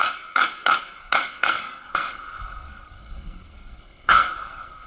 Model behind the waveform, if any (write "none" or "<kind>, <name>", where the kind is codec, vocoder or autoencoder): codec, SNAC